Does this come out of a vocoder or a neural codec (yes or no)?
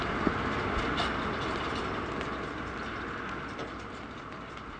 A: no